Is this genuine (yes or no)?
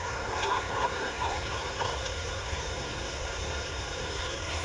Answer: no